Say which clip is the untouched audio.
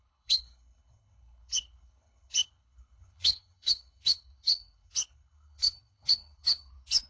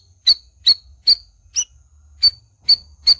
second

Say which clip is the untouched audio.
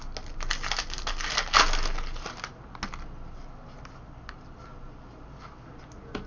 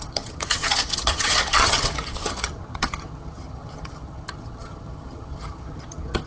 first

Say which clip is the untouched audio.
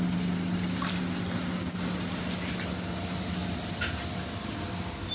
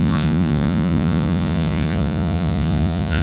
first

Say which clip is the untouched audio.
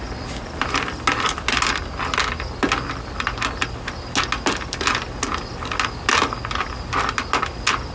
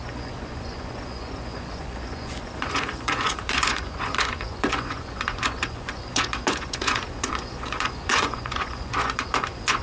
first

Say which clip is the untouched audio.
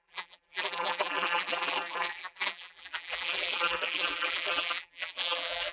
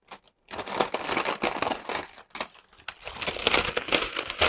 second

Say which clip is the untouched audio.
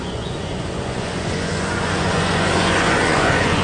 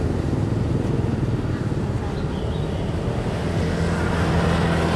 second